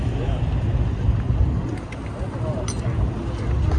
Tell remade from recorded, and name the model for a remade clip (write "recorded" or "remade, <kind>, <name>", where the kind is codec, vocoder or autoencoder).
recorded